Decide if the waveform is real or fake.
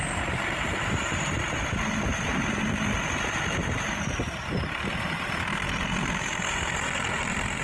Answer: fake